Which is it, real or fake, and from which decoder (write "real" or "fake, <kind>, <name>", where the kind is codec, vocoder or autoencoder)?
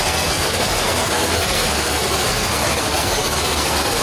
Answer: fake, codec, SNAC